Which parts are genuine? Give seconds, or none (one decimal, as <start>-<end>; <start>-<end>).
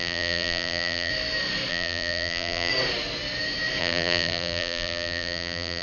1.1-1.7; 2.7-3.8